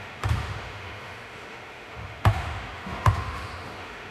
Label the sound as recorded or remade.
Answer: remade